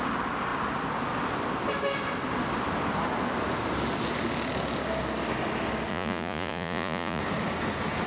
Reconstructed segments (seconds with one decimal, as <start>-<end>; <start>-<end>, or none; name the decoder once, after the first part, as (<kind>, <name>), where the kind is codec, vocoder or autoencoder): 5.9-7.2 (vocoder, Vocos)